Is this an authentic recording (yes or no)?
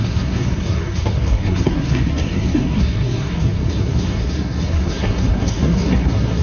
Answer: no